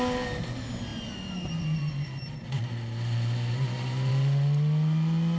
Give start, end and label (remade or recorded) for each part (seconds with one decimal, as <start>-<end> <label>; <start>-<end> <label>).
0.0-5.4 recorded